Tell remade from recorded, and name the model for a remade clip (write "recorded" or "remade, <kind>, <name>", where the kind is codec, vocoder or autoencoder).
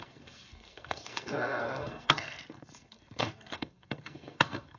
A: remade, codec, SNAC